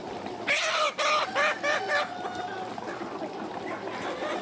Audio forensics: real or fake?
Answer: real